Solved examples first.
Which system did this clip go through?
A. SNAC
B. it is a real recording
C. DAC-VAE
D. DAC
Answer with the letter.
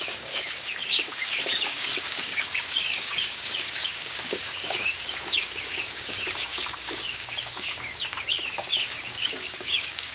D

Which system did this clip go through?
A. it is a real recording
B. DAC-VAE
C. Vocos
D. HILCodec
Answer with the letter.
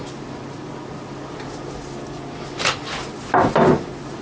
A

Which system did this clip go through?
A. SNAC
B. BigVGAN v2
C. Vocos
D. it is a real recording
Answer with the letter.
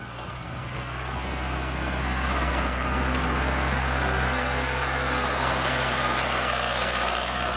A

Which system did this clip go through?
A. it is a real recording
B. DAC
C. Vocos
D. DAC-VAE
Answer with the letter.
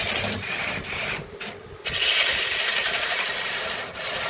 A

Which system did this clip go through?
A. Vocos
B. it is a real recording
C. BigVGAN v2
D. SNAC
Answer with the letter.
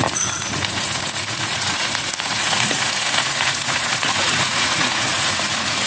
A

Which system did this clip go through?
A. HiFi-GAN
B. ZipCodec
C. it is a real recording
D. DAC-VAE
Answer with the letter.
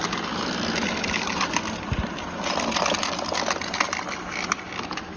C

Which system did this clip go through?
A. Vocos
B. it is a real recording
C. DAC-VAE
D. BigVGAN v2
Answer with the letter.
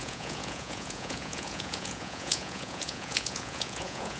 A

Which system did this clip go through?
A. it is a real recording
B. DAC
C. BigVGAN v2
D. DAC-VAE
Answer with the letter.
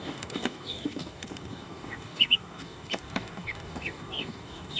B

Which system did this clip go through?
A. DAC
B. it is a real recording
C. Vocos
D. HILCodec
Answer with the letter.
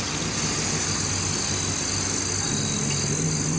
B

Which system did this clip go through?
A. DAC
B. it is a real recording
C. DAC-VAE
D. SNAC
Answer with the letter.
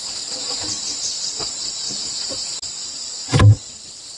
B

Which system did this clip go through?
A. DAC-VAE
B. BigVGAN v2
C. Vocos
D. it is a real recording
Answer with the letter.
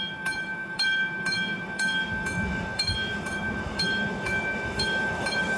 A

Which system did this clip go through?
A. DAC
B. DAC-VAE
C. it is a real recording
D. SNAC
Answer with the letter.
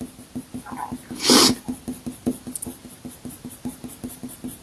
C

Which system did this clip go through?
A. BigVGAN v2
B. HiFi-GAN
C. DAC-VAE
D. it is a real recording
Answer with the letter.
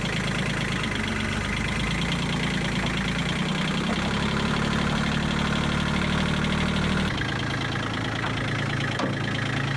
D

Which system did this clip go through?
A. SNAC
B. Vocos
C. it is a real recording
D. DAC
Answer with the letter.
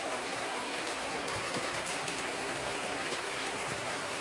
A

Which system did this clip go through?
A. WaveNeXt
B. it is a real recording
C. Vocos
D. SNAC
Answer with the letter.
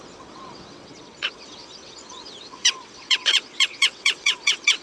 A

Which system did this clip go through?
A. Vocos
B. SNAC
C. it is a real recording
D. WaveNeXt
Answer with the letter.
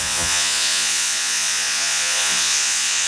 A